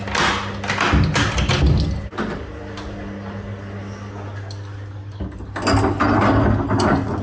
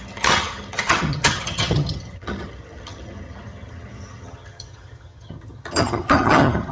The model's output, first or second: second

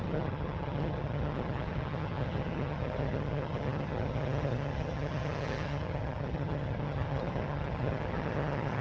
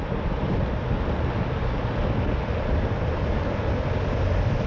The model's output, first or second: first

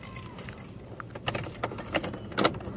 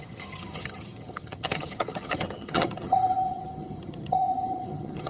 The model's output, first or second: second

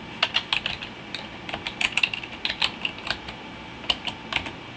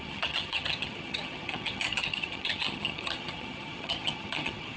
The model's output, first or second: second